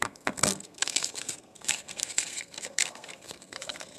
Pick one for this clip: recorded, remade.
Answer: remade